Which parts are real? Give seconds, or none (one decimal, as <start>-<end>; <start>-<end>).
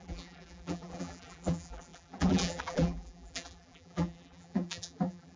none